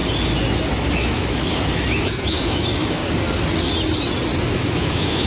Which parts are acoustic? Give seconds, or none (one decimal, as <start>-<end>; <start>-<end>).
0.0-0.9; 3.0-4.5

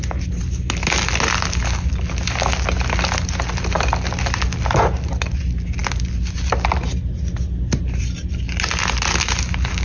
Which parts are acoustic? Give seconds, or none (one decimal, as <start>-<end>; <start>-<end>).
0.0-9.8

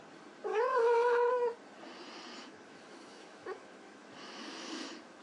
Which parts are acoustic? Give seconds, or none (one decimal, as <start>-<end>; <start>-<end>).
0.0-0.5; 1.3-2.4